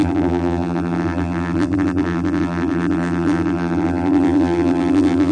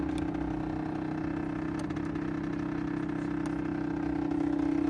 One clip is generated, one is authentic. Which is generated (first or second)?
first